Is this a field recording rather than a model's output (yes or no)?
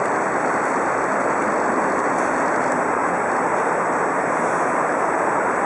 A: yes